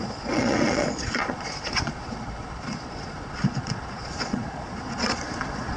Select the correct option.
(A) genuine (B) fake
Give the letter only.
B